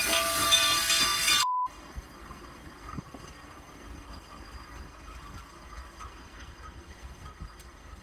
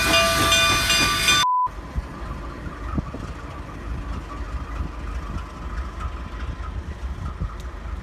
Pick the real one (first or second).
second